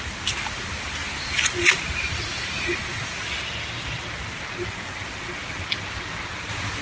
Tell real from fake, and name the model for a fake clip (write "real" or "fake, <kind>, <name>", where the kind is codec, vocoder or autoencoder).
real